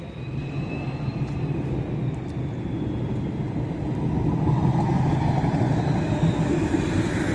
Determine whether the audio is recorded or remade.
recorded